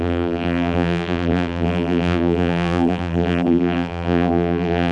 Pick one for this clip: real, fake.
fake